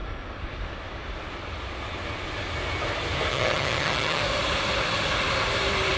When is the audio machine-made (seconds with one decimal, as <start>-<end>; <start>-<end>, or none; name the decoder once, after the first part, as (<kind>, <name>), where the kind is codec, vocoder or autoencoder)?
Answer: 3.3-4.2 (vocoder, HiFi-GAN)

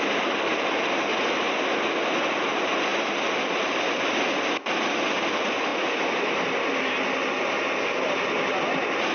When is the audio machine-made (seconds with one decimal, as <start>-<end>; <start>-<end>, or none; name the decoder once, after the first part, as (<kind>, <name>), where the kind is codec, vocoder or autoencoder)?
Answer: 2.9-4.4 (vocoder, BigVGAN v2)

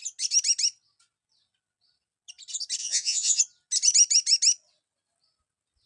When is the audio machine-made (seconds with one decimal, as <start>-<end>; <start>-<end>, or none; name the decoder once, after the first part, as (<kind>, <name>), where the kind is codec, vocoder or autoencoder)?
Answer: 2.8-3.4 (vocoder, Vocos)

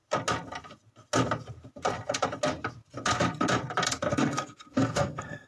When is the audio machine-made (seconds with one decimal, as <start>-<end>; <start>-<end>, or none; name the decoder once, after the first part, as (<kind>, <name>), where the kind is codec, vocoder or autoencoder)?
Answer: 4.1-5.5 (codec, SNAC)

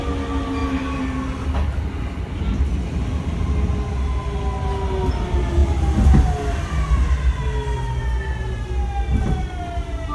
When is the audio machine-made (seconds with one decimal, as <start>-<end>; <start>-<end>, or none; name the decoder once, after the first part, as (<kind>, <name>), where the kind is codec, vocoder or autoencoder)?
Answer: none

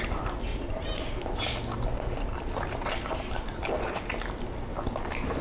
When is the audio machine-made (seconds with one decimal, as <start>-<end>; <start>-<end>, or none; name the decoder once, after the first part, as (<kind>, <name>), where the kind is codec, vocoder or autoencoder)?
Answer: 0.5-1.4 (vocoder, BigVGAN v2); 1.9-3.6